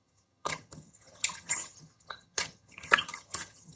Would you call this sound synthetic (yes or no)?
yes